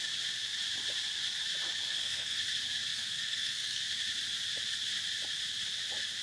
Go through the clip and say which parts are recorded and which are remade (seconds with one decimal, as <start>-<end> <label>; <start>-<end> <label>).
0.0-1.9 recorded; 1.9-2.4 remade; 2.4-2.9 recorded; 2.9-3.8 remade; 3.8-6.2 recorded